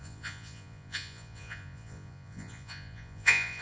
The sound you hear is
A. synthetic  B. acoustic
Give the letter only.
A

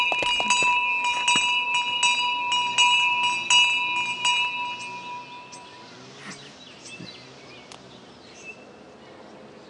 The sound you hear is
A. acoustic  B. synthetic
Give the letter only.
A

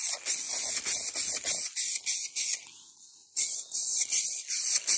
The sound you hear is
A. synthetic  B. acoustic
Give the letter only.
B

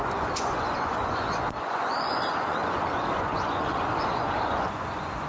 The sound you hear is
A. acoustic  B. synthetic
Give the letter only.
B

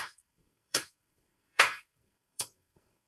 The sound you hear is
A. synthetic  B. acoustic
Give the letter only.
A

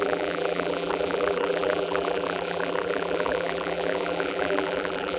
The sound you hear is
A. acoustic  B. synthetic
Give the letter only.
B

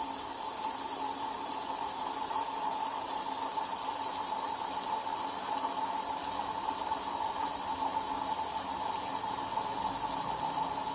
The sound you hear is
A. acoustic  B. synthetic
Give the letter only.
A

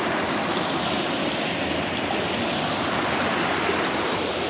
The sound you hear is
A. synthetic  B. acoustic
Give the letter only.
B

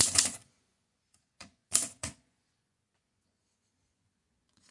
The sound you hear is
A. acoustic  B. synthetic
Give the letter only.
B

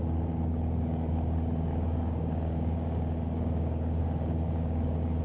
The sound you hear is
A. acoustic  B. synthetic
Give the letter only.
B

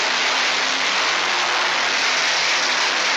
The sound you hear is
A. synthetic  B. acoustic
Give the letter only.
B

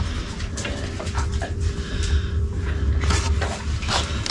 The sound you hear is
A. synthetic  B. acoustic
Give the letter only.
B